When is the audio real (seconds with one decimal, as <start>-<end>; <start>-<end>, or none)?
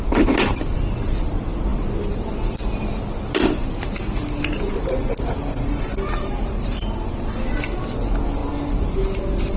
0.0-9.6